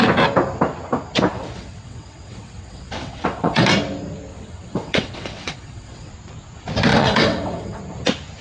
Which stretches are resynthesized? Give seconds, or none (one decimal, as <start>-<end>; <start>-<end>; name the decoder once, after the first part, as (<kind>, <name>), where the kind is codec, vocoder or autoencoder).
1.3-3.7 (vocoder, WaveNeXt); 4.3-6.1; 6.9-7.8